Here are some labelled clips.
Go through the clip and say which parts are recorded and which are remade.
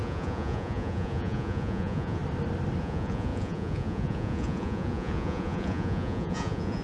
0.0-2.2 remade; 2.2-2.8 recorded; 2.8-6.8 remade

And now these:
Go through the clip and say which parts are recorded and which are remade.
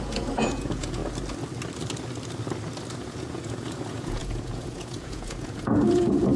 0.0-1.0 remade; 1.0-3.0 recorded; 3.0-6.4 remade